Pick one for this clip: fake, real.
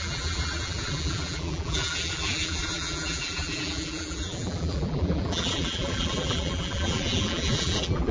fake